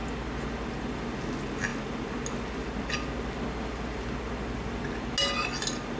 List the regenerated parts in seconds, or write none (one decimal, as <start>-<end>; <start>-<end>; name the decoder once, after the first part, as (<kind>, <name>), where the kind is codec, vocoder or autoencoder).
none